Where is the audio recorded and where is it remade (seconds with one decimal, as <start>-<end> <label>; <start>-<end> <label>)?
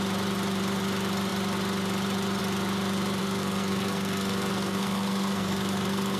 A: 0.0-3.2 recorded; 3.2-6.2 remade